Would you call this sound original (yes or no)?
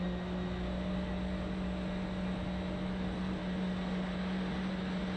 yes